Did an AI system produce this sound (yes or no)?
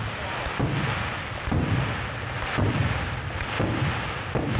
no